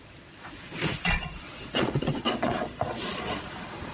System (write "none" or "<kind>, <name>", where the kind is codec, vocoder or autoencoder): vocoder, Vocos